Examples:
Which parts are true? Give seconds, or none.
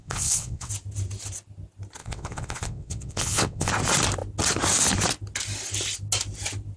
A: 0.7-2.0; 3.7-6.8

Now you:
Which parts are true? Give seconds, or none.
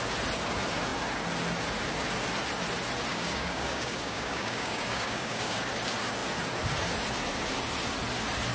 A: 0.0-3.1; 5.6-8.5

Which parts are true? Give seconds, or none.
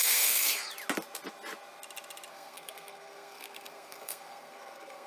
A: 0.7-2.3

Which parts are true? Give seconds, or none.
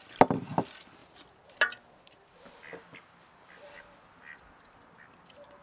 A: 0.0-5.6